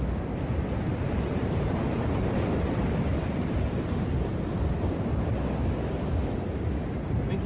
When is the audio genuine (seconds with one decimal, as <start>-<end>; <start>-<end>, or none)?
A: 0.0-0.9; 4.1-7.5